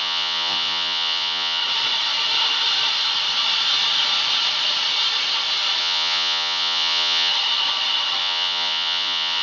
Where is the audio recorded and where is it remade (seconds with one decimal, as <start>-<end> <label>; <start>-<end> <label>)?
0.0-1.6 remade; 1.6-5.8 recorded; 5.8-7.3 remade; 7.3-8.2 recorded; 8.2-9.4 remade